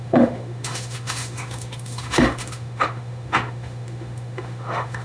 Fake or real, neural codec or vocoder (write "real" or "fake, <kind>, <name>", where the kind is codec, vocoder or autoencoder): fake, autoencoder, DAC-VAE